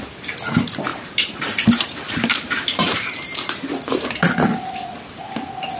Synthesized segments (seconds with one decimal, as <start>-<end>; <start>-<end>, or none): 0.9-4.1

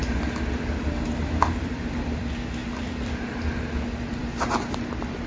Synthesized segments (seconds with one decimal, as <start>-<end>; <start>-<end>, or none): 2.6-3.4

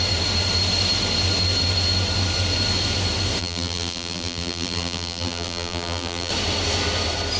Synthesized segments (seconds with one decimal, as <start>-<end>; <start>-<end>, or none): 3.4-6.3